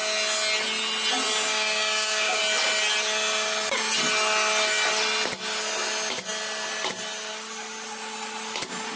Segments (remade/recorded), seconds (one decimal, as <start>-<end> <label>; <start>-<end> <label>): 0.0-1.5 recorded; 1.5-2.4 remade; 2.4-9.0 recorded